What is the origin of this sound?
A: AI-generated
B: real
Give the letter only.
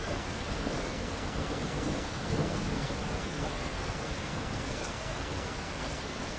A